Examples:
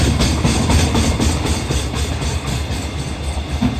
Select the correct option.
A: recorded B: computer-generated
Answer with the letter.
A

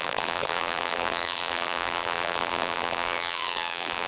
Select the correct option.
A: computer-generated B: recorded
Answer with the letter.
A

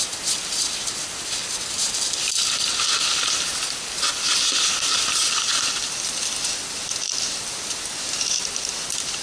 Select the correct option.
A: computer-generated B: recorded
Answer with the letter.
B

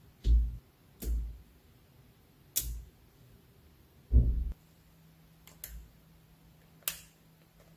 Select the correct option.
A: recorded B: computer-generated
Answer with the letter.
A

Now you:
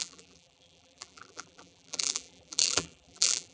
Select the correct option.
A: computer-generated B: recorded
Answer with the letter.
A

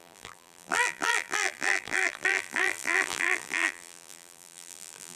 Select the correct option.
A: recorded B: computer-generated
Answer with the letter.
B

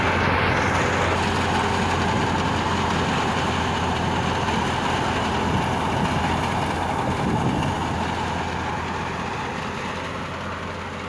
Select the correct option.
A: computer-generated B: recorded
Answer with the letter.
B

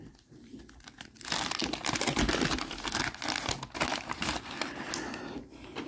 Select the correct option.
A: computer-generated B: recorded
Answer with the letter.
B